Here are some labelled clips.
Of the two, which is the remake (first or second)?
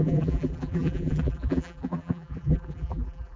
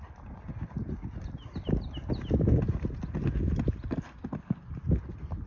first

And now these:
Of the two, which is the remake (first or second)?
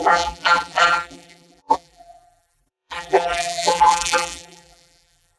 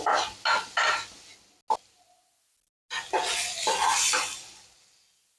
first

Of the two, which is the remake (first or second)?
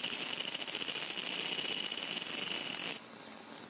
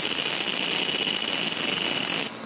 first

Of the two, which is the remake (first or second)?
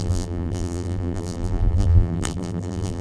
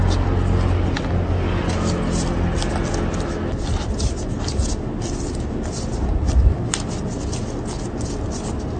first